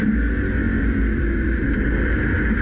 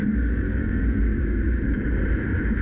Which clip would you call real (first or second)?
first